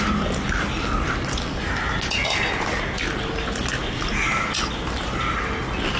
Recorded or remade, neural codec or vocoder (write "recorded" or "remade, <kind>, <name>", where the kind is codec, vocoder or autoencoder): recorded